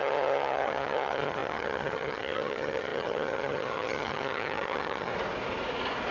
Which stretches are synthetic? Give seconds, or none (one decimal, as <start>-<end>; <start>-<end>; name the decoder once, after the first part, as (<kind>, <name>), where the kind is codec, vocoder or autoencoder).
0.0-5.1 (vocoder, HiFi-GAN)